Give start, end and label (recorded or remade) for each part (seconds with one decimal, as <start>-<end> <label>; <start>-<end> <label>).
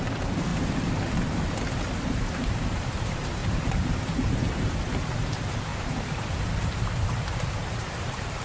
0.0-0.5 remade; 0.5-2.2 recorded; 2.2-8.4 remade